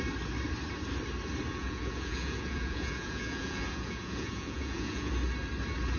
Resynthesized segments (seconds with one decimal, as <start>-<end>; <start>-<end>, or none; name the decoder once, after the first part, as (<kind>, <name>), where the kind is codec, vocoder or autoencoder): 1.5-5.1 (vocoder, Vocos)